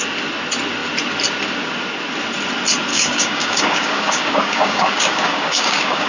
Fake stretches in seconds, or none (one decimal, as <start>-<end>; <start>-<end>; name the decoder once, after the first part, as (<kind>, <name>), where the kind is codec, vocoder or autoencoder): 2.9-6.1 (codec, DAC)